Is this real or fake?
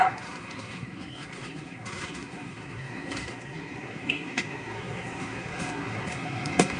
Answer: fake